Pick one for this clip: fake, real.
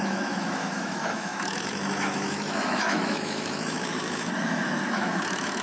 fake